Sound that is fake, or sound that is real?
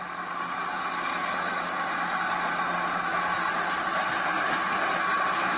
real